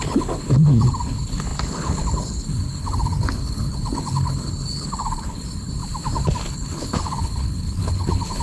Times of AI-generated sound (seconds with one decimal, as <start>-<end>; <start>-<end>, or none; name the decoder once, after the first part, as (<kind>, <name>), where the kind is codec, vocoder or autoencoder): 0.0-5.8 (codec, HILCodec); 6.4-8.4